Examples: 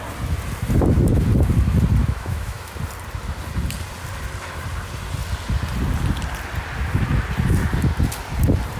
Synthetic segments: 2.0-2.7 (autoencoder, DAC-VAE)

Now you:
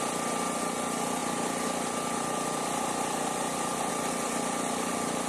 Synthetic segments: none

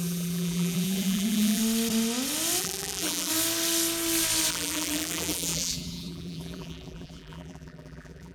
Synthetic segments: 0.0-1.6 (vocoder, BigVGAN v2); 2.6-3.3; 4.5-8.3

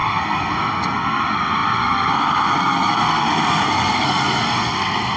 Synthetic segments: 0.0-5.2 (codec, SNAC)

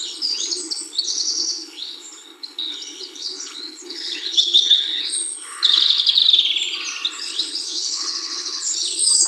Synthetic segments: 0.0-6.2 (codec, HILCodec); 7.1-9.3

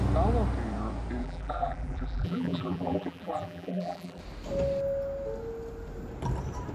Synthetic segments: 1.2-4.2 (vocoder, BigVGAN v2)

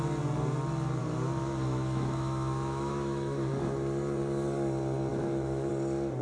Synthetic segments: 1.0-3.5 (autoencoder, DAC-VAE); 5.1-5.7